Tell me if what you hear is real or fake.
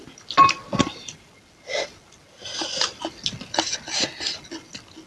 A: real